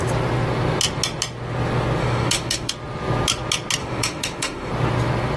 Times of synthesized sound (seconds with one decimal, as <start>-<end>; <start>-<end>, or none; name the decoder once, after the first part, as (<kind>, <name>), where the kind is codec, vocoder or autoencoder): 2.0-2.7 (autoencoder, DAC-VAE); 3.8-4.7